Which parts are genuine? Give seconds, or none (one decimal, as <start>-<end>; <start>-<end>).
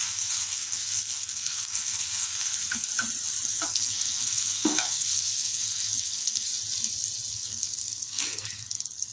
2.9-3.5; 6.5-7.3